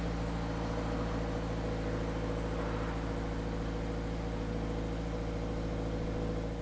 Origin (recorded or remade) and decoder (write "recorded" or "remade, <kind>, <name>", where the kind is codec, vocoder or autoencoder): recorded